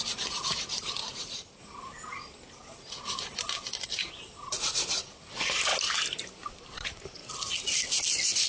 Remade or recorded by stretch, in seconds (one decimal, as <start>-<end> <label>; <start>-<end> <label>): 0.0-1.0 recorded; 1.0-1.6 remade; 1.6-3.9 recorded; 3.9-4.6 remade; 4.6-5.7 recorded; 5.7-6.3 remade; 6.3-8.5 recorded